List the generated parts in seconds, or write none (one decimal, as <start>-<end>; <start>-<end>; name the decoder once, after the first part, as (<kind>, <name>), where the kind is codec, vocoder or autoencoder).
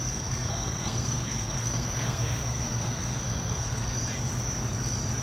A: 0.0-4.0 (codec, SNAC)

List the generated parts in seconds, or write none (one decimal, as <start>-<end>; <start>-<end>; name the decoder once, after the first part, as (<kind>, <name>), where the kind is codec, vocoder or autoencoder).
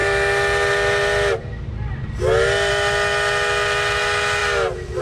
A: none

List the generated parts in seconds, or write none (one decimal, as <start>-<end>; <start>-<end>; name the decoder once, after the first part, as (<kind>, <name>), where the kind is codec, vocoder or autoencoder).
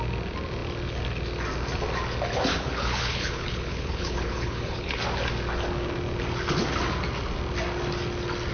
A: 2.5-5.0 (codec, HILCodec)